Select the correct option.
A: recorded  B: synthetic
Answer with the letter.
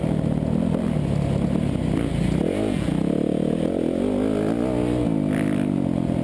A